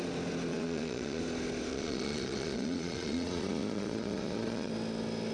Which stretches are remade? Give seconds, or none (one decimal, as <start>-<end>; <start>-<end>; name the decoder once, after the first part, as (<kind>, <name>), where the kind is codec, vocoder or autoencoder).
0.5-1.2 (vocoder, Vocos); 1.7-4.7